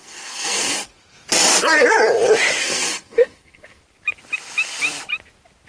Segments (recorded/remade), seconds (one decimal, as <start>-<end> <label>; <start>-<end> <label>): 0.0-0.9 remade; 0.9-2.6 recorded; 2.6-3.8 remade; 3.8-5.7 recorded